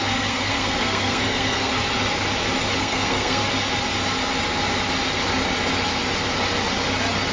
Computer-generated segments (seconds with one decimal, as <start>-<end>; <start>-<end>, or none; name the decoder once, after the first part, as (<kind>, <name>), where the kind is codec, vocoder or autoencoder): 0.0-1.7 (codec, SNAC); 2.8-3.4